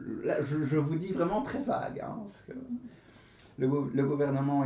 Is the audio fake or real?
real